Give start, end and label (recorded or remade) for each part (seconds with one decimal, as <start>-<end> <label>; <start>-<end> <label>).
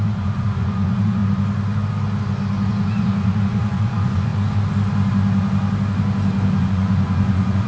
0.0-1.2 remade; 1.2-2.7 recorded; 2.7-4.3 remade; 4.3-6.6 recorded; 6.6-7.7 remade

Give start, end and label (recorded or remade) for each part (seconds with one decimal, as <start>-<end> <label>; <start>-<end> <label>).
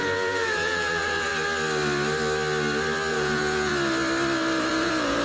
0.0-1.3 remade; 1.3-3.1 recorded; 3.1-3.7 remade; 3.7-4.7 recorded; 4.7-5.2 remade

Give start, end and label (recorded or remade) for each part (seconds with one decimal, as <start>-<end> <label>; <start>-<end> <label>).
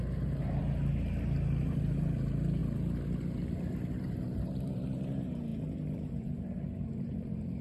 0.0-0.6 remade; 0.6-1.6 recorded; 1.6-2.6 remade; 2.6-4.1 recorded; 4.1-7.6 remade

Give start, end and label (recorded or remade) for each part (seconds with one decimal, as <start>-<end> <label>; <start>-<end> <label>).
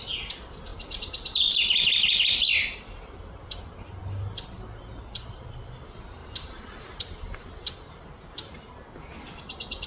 0.0-6.2 recorded; 6.2-7.7 remade; 7.7-9.9 recorded